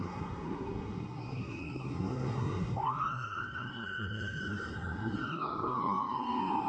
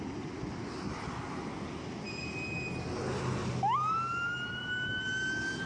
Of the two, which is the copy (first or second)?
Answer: first